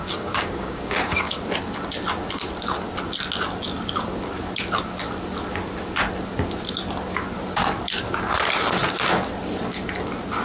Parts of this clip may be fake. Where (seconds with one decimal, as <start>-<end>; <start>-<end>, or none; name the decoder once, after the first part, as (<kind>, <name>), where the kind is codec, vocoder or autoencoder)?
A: 0.0-1.4 (codec, DAC)